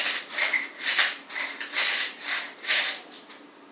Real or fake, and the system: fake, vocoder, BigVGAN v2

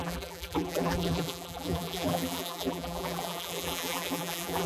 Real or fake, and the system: fake, vocoder, BigVGAN v2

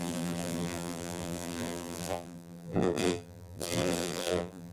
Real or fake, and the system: fake, vocoder, BigVGAN v2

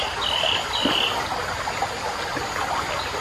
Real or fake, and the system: real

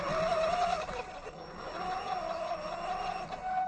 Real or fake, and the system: real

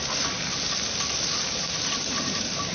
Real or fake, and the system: fake, vocoder, BigVGAN v2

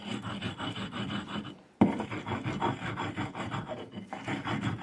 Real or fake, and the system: real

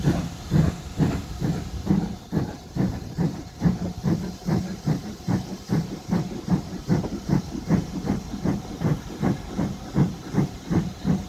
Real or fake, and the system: fake, vocoder, BigVGAN v2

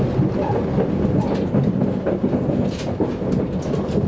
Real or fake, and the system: real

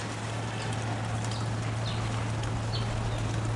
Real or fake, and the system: real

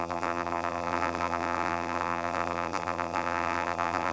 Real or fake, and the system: fake, vocoder, BigVGAN v2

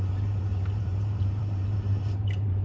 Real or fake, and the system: fake, vocoder, BigVGAN v2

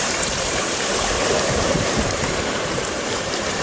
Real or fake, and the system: fake, vocoder, BigVGAN v2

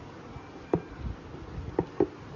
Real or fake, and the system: real